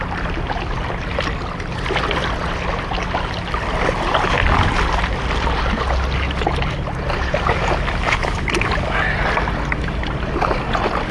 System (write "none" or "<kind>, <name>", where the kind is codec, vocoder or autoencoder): none